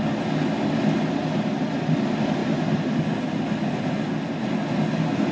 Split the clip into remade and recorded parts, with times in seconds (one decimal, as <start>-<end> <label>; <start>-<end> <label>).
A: 0.0-2.4 recorded; 2.4-3.8 remade; 3.8-5.3 recorded